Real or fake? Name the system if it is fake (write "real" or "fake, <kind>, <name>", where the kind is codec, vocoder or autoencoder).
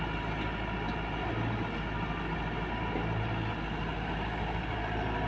real